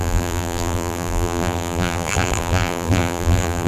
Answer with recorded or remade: remade